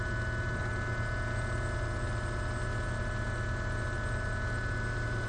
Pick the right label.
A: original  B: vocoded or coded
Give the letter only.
A